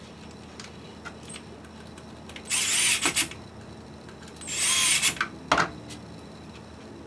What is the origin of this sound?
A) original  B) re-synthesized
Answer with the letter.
A